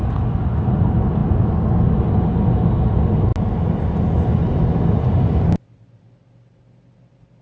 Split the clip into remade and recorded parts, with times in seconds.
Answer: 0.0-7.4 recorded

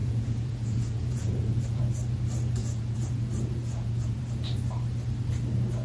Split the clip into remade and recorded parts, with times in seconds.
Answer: 0.0-1.8 remade; 1.8-2.6 recorded; 2.6-3.2 remade; 3.2-3.6 recorded; 3.6-4.2 remade; 4.2-5.8 recorded

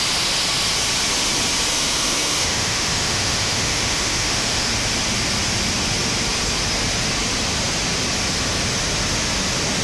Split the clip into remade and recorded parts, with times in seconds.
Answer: 0.0-1.7 recorded; 1.7-4.7 remade; 4.7-9.8 recorded

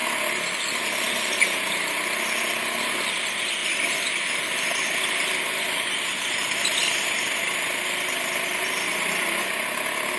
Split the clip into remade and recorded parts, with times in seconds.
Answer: 0.0-10.2 recorded